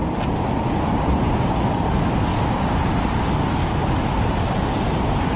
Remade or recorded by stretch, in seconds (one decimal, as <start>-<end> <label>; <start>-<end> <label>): 0.0-5.4 recorded